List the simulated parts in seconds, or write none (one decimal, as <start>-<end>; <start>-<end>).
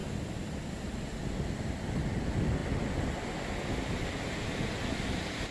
none